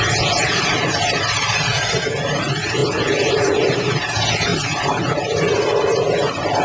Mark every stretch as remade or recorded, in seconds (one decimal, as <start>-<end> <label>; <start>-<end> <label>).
0.0-6.6 recorded